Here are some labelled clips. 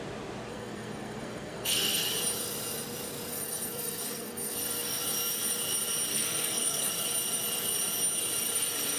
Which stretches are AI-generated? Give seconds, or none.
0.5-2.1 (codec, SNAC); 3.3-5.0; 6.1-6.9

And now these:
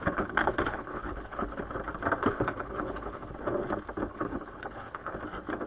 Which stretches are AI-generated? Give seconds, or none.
0.0-1.6 (codec, HILCodec); 2.2-3.3; 4.1-5.1

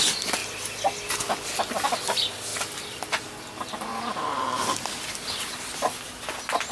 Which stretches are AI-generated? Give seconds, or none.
none

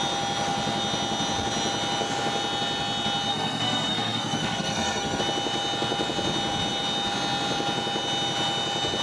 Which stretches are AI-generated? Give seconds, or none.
3.3-5.2 (codec, SNAC)

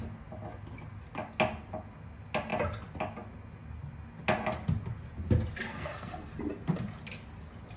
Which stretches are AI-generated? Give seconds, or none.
5.7-6.3 (codec, SNAC)

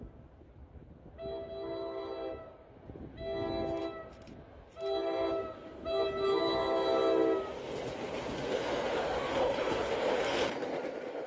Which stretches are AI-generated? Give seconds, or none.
9.4-9.9 (codec, HILCodec)